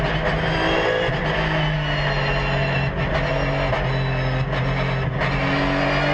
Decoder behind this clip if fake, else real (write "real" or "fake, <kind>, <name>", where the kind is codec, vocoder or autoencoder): real